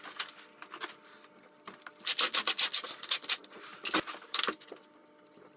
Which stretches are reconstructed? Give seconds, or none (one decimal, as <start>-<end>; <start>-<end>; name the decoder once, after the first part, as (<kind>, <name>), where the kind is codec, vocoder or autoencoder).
none